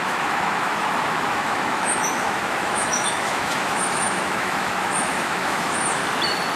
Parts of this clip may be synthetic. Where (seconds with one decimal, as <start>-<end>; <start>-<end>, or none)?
0.0-6.0